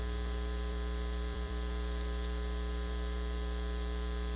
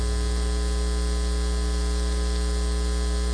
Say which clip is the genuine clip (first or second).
second